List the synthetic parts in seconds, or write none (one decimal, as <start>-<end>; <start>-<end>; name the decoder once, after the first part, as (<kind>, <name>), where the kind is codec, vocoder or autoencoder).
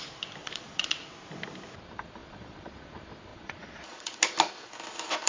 0.4-1.0 (vocoder, Vocos); 2.2-2.9; 3.3-4.2